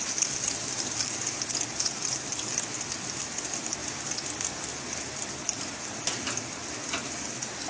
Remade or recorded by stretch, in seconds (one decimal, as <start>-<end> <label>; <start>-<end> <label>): 0.0-7.7 recorded